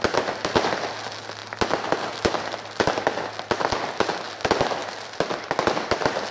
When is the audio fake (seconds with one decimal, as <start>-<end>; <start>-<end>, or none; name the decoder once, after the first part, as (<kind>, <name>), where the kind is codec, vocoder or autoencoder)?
none